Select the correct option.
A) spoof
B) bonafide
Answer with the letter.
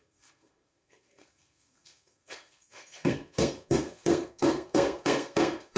A